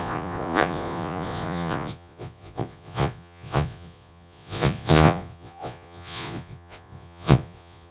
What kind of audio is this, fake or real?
fake